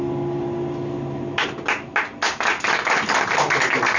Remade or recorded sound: recorded